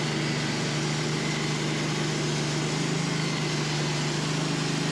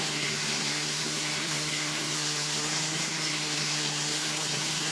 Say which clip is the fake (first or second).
second